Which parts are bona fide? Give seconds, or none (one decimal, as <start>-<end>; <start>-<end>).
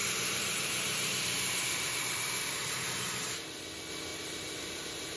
2.9-4.1